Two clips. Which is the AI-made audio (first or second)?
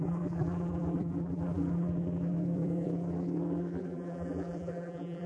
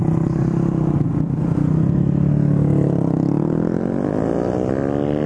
first